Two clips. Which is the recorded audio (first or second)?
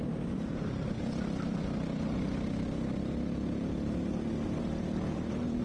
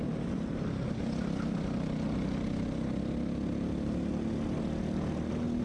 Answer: second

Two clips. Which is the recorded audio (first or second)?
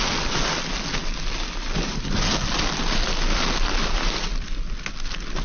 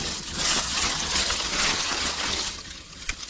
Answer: first